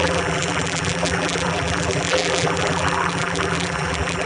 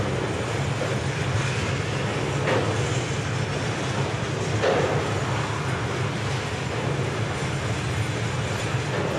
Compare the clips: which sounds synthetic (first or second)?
first